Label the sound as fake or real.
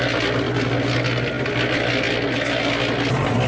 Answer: real